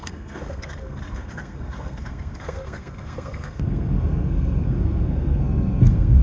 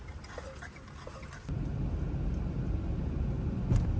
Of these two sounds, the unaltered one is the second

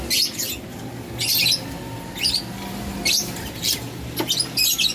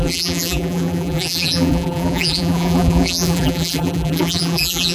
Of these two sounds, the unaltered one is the first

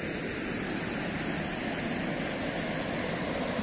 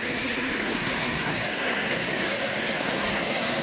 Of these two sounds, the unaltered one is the first